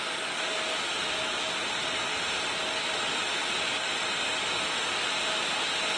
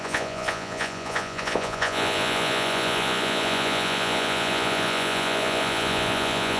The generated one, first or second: second